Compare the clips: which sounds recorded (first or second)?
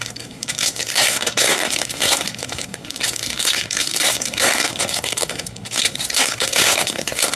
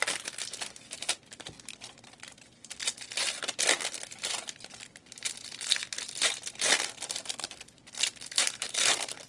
second